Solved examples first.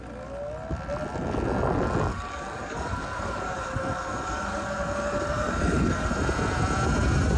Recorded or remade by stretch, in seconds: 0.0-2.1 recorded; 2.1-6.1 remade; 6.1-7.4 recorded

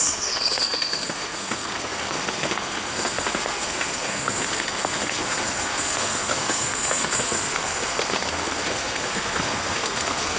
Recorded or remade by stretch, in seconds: 0.0-10.4 remade

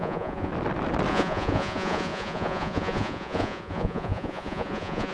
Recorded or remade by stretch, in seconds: 0.0-0.5 remade; 0.5-1.1 recorded; 1.1-5.1 remade

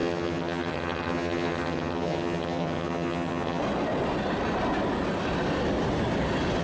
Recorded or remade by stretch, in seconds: 0.0-3.6 remade; 3.6-6.6 recorded

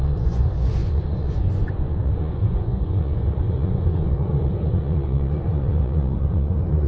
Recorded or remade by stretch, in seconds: 0.0-6.9 remade

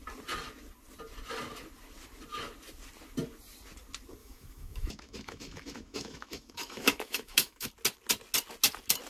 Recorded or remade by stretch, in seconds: 0.0-4.2 recorded; 4.2-7.7 remade; 7.7-9.1 recorded